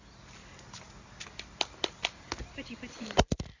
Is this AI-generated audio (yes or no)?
no